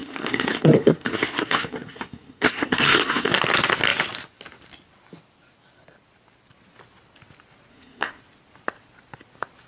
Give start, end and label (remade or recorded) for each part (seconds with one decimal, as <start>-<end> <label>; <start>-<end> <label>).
0.0-3.3 remade; 3.3-7.7 recorded; 7.7-8.2 remade; 8.2-9.7 recorded